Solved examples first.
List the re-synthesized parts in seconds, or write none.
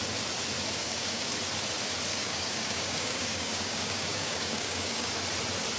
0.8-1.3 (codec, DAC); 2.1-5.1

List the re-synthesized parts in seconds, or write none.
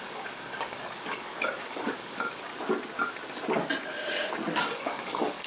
0.0-2.5 (codec, DAC); 4.6-5.5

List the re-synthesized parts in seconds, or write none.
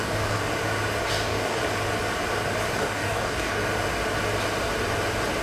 0.0-0.4 (codec, DAC); 1.1-1.6; 2.7-3.6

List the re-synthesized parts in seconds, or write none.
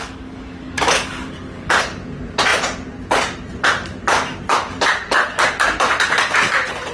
0.0-1.8 (codec, DAC)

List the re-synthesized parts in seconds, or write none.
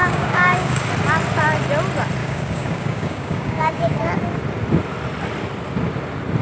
0.0-0.9 (codec, DAC); 2.2-4.0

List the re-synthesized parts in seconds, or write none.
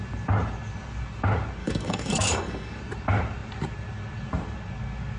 1.6-2.8 (codec, DAC)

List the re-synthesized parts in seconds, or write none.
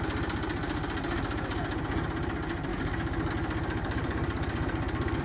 2.7-3.3 (codec, DAC); 3.8-5.2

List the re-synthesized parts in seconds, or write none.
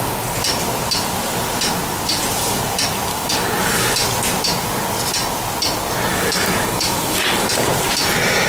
3.1-3.9 (codec, DAC); 6.1-7.7